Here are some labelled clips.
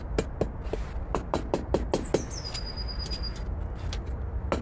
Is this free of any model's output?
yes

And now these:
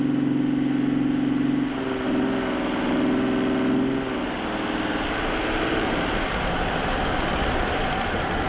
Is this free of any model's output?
yes